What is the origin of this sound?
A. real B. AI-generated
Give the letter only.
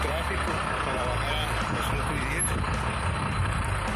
A